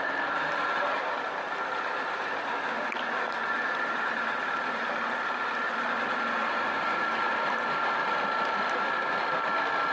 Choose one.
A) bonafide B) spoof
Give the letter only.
A